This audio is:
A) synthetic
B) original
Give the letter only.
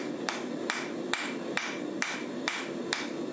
B